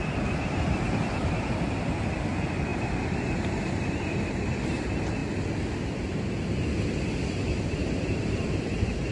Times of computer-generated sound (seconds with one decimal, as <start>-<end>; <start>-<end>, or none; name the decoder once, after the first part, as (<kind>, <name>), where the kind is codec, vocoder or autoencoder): 0.0-2.7 (vocoder, BigVGAN v2); 3.5-5.2; 6.5-9.1